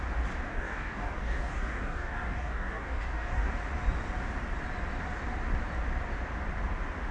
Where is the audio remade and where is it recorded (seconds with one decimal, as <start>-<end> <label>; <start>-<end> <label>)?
0.0-0.5 recorded; 0.5-3.5 remade; 3.5-7.1 recorded

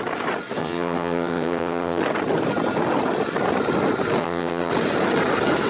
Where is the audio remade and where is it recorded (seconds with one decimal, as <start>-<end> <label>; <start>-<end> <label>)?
0.0-0.6 recorded; 0.6-2.0 remade; 2.0-4.2 recorded; 4.2-4.7 remade; 4.7-5.7 recorded